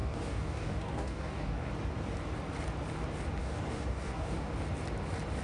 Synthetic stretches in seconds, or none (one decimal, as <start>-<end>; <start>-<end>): 0.0-1.7; 3.4-4.5